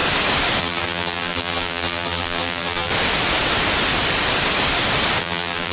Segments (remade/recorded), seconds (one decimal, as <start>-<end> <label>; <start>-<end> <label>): 0.0-0.6 recorded; 0.6-2.9 remade; 2.9-5.2 recorded; 5.2-5.7 remade